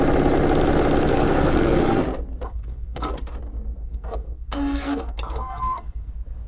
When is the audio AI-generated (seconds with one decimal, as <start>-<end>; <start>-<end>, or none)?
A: 1.1-2.0; 2.5-3.1; 3.8-6.1